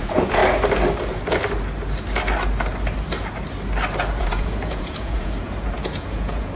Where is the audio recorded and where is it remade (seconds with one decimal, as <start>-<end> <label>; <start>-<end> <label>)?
0.0-0.4 remade; 0.4-4.2 recorded; 4.2-6.6 remade